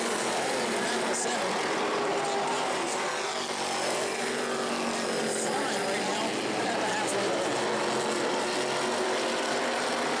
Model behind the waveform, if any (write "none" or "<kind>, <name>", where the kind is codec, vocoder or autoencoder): none